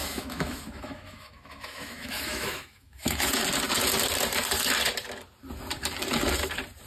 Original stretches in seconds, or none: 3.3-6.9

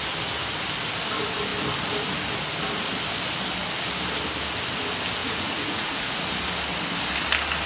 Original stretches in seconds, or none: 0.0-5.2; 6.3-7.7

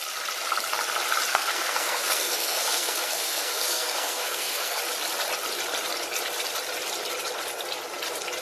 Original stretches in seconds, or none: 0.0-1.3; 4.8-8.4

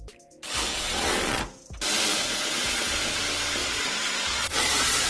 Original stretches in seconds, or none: 0.0-0.7; 1.4-2.1; 3.2-3.6

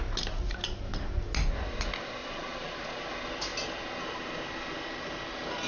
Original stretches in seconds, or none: 0.0-2.2; 3.0-5.7

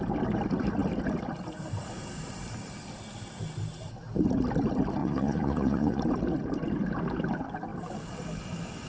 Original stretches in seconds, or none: 0.0-5.0; 6.0-8.9

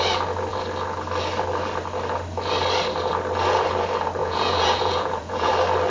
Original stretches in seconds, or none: 0.0-4.2; 5.5-5.9

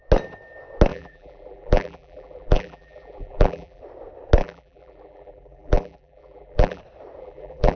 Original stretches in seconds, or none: 0.0-0.9; 3.8-4.4; 6.8-7.2